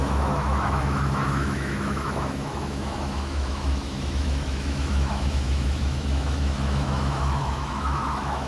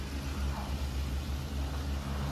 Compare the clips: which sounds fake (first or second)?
first